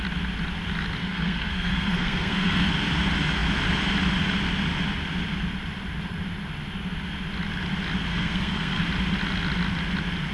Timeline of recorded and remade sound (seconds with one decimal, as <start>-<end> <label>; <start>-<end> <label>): 0.0-1.0 recorded; 1.0-2.7 remade; 2.7-8.1 recorded; 8.1-8.8 remade; 8.8-10.3 recorded